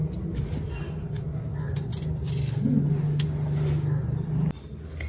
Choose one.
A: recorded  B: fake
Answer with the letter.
A